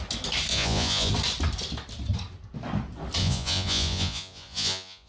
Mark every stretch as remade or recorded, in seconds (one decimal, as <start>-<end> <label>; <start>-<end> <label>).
0.0-0.5 recorded; 0.5-1.1 remade; 1.1-3.2 recorded; 3.2-5.1 remade